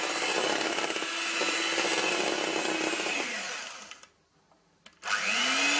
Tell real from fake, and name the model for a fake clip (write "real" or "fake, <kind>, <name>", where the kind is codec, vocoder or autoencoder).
real